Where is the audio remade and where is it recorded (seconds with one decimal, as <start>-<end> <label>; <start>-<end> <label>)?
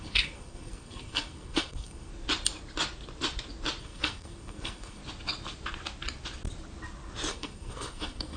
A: 0.0-2.1 remade; 2.1-3.8 recorded; 3.8-5.0 remade; 5.0-7.3 recorded; 7.3-8.4 remade